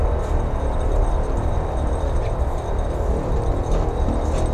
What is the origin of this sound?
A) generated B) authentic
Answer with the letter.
B